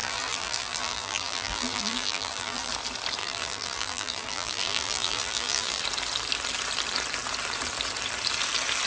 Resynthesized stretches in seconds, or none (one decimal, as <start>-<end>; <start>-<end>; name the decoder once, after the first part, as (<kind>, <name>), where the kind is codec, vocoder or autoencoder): 0.0-2.7 (vocoder, BigVGAN v2); 3.2-5.8